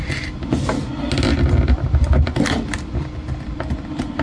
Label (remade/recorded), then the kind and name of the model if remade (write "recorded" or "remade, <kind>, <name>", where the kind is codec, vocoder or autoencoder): recorded